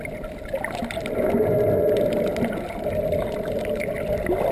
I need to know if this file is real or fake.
real